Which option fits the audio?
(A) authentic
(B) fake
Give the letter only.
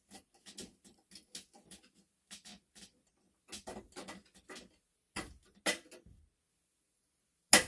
A